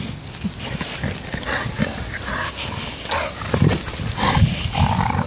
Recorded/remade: recorded